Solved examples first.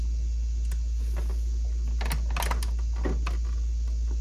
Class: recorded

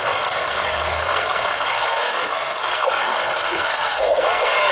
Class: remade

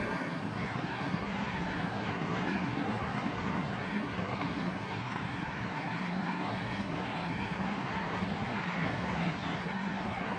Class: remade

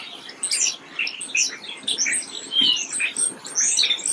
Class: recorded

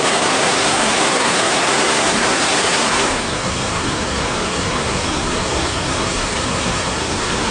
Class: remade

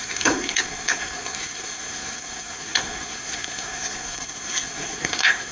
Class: remade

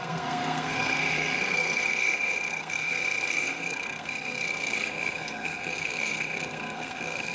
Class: remade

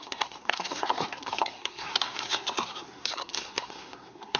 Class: remade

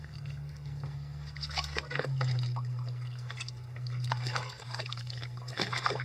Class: remade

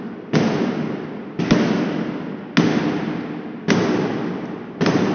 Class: recorded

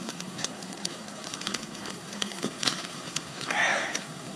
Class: remade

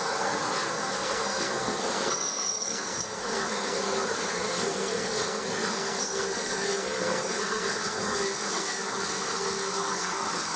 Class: remade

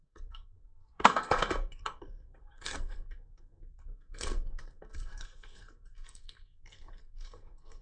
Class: remade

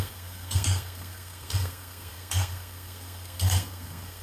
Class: remade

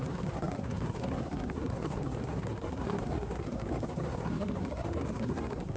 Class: remade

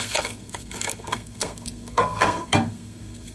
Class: remade